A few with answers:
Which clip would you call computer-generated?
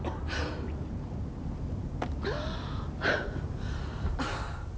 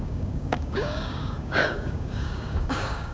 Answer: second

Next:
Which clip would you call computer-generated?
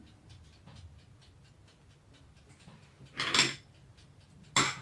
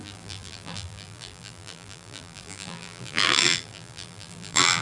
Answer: second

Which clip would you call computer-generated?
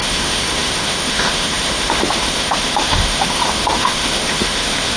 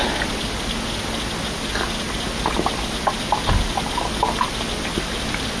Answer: first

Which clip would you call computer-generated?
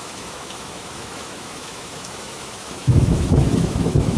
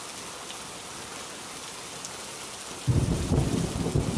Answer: first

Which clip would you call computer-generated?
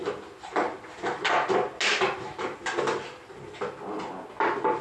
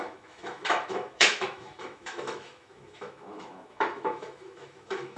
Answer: second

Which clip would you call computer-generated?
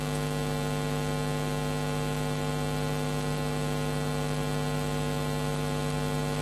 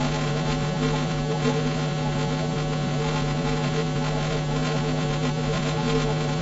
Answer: second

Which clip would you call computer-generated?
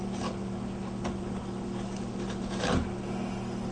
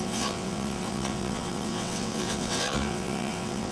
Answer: second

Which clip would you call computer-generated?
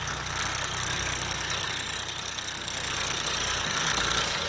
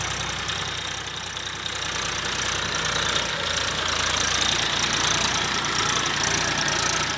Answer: first